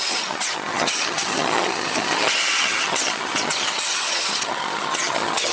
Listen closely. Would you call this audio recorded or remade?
remade